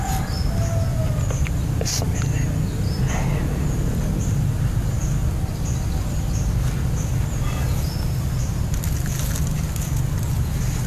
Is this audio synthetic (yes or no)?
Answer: no